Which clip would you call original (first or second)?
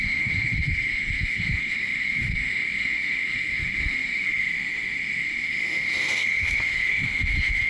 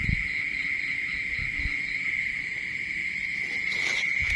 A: second